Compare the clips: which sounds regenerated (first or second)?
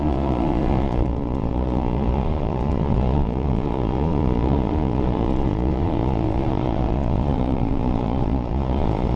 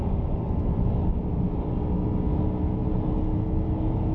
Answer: first